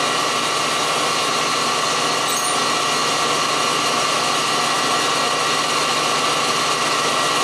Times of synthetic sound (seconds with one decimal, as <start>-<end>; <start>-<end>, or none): none